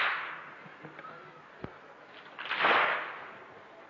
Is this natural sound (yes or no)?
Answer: yes